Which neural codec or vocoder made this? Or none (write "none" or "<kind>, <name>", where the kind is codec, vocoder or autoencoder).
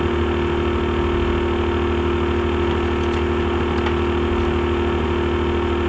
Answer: none